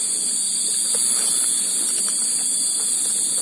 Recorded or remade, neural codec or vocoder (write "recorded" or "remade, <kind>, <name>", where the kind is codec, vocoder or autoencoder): recorded